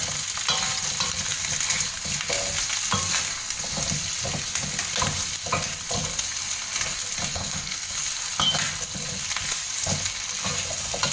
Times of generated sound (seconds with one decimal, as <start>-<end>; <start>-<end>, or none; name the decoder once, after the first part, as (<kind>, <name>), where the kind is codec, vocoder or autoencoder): 7.3-7.9 (codec, SNAC)